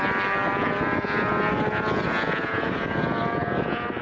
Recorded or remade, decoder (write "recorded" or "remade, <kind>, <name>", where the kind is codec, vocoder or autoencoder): recorded